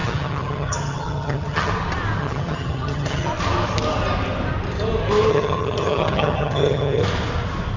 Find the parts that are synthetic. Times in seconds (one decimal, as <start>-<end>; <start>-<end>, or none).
0.0-1.7; 2.2-3.3; 5.3-7.0